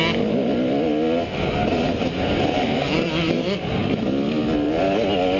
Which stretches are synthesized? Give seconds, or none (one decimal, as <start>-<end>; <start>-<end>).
none